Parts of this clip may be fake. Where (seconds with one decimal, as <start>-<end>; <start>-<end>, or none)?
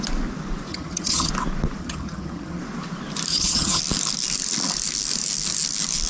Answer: 0.7-1.3; 1.8-2.6; 3.3-3.8